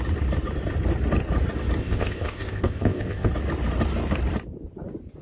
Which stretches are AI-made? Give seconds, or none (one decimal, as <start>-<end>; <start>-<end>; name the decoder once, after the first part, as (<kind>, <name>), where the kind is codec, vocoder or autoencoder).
1.8-3.3 (codec, ZipCodec)